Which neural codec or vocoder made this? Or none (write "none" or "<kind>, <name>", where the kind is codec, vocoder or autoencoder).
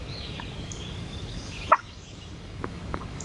codec, DAC